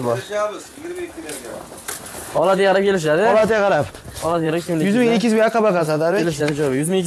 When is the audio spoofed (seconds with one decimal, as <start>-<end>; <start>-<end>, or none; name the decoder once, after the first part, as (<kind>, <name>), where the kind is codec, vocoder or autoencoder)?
3.4-4.5 (vocoder, Vocos); 5.8-6.5

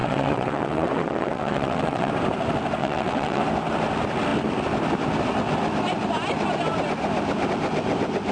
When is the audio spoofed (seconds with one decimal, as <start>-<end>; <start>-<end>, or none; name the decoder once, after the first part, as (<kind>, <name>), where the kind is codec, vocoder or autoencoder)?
0.0-2.1 (vocoder, WaveNeXt); 2.8-3.4

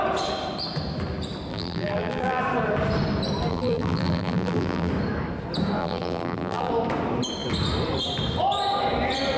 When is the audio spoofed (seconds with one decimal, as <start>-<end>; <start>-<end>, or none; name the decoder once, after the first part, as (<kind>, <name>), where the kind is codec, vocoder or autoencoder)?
1.5-2.4 (vocoder, BigVGAN v2); 3.5-4.9; 5.8-6.7